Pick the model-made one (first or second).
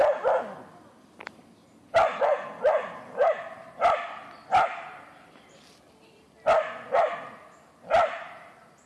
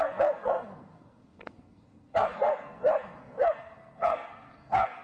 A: second